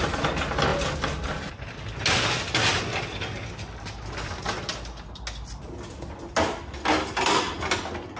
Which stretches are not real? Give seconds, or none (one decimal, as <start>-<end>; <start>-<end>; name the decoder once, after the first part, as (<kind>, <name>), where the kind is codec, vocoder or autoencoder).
none